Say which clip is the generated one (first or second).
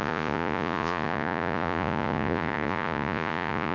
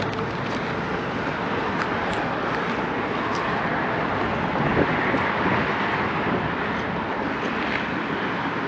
first